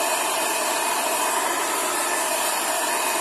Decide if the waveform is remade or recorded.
remade